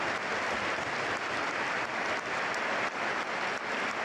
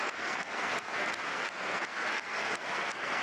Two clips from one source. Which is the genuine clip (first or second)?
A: first